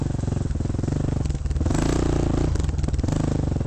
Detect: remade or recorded recorded